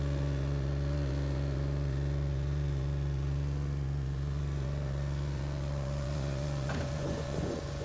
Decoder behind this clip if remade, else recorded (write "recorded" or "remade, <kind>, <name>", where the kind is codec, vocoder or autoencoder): remade, vocoder, Vocos